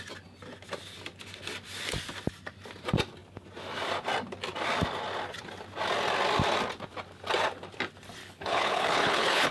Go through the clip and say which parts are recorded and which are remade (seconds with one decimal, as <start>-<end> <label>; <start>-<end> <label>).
0.0-8.2 recorded; 8.2-9.5 remade